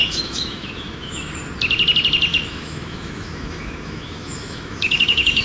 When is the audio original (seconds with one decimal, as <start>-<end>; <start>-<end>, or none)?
1.3-2.3

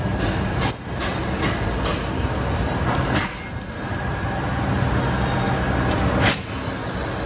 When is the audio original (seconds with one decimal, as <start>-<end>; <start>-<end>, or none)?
0.0-7.3

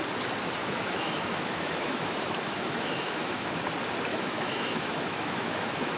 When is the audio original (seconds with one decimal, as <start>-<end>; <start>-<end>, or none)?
0.0-0.6; 3.6-4.1

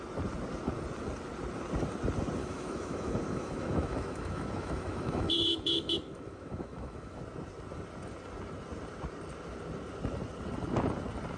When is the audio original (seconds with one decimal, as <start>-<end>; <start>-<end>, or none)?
0.0-2.4; 7.2-11.4